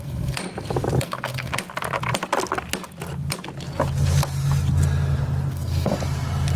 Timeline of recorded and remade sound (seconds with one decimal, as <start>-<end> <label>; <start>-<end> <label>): 0.0-0.4 remade; 0.4-1.0 recorded; 1.0-1.5 remade; 1.5-5.5 recorded; 5.5-5.9 remade; 5.9-6.6 recorded